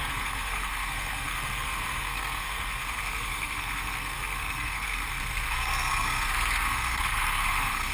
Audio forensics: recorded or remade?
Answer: remade